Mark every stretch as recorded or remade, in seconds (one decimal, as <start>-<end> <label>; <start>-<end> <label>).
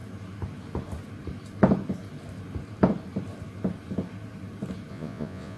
0.0-4.9 recorded; 4.9-5.6 remade